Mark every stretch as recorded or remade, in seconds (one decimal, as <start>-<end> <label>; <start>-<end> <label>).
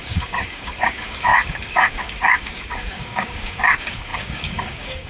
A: 0.0-5.1 remade